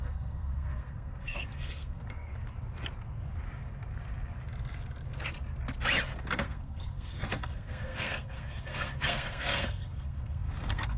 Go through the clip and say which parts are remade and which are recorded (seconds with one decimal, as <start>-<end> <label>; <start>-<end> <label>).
0.0-2.3 remade; 2.3-6.2 recorded; 6.2-11.0 remade